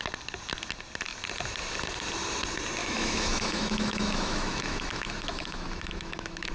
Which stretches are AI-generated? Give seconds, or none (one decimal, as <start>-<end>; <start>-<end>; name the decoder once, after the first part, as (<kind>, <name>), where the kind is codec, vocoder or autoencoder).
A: 2.8-6.5 (autoencoder, DAC-VAE)